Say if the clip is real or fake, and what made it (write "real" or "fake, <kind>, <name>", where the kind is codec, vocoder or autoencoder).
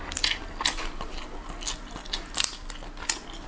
real